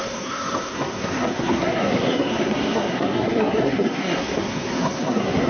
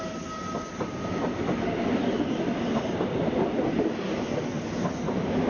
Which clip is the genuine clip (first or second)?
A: second